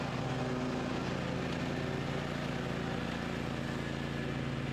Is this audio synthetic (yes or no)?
no